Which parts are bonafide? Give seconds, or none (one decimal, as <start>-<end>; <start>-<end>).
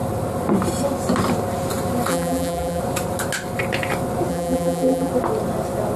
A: 0.0-2.1; 2.8-4.3; 5.1-6.0